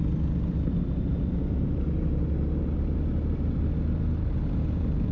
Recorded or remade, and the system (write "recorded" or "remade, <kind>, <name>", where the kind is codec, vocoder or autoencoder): recorded